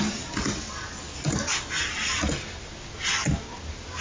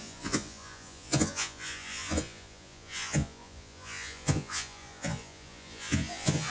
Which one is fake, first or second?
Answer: second